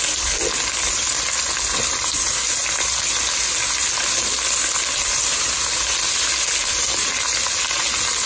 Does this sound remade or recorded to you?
recorded